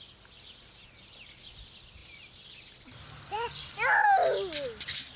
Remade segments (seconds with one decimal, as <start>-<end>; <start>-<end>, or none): none